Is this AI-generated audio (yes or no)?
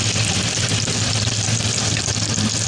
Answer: no